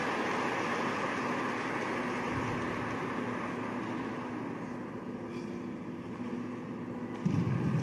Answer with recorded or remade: recorded